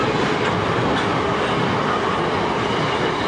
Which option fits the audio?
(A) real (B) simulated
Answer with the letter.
A